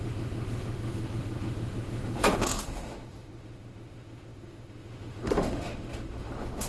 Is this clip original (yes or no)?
no